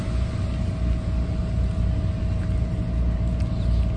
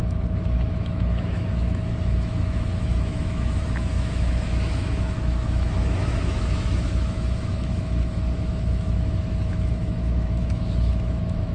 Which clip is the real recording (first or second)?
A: first